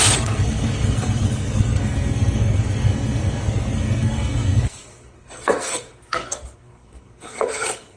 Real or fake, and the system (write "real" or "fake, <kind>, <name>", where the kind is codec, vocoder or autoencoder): fake, codec, SNAC